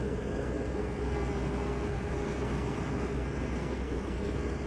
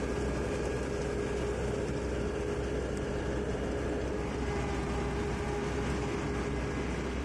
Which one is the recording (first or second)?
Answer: second